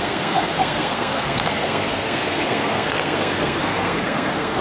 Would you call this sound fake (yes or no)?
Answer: yes